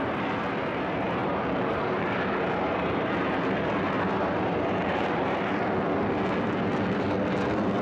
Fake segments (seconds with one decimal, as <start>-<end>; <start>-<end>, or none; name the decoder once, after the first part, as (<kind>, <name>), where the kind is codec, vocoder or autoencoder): 1.2-2.3 (vocoder, BigVGAN v2); 4.8-5.5